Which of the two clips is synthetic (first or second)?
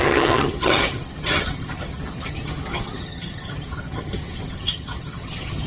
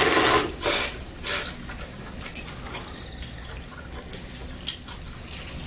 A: first